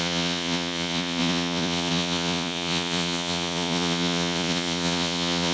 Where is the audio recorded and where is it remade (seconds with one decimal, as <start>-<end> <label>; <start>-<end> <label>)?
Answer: 0.0-5.5 remade